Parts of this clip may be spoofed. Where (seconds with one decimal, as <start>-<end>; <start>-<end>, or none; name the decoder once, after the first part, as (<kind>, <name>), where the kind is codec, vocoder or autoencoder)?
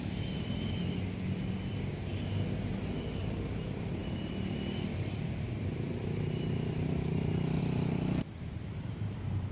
none